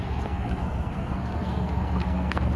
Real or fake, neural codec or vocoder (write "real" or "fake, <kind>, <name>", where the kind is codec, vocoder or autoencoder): fake, codec, SNAC